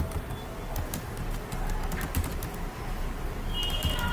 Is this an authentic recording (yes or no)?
yes